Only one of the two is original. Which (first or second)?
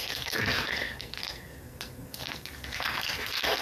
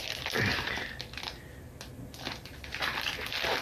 second